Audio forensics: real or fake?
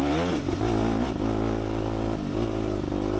real